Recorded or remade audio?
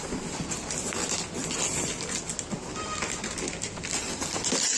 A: recorded